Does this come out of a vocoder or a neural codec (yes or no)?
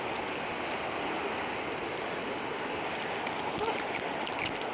no